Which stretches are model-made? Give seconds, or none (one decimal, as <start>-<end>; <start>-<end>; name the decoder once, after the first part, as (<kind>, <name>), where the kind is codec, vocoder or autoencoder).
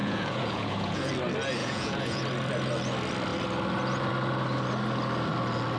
0.0-1.1 (vocoder, Vocos); 1.6-2.2